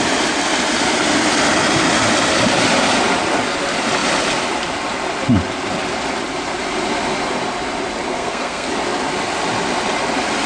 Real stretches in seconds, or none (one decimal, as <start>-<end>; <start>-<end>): 0.0-8.1; 8.7-10.5